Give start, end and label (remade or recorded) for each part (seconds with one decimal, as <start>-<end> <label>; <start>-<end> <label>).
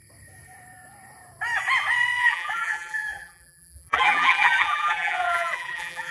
0.0-2.2 recorded; 2.2-6.1 remade